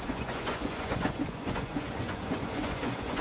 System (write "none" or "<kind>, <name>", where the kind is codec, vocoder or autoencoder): vocoder, Vocos